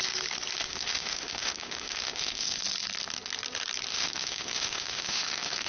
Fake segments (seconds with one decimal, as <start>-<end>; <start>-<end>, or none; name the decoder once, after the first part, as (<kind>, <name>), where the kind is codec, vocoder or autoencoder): 0.7-2.6 (autoencoder, DAC-VAE); 3.9-5.7